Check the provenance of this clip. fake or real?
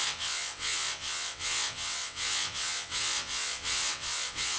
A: fake